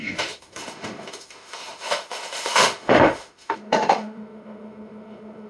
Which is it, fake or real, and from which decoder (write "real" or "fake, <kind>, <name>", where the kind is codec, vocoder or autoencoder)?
fake, autoencoder, DAC-VAE